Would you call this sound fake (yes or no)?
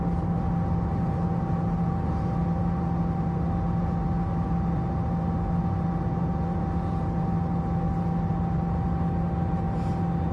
no